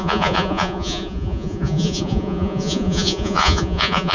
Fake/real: fake